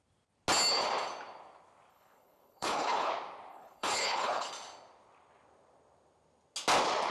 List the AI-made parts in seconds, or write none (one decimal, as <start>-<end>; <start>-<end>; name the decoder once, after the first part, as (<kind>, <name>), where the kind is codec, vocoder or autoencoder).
1.9-3.1 (codec, HILCodec); 3.5-4.5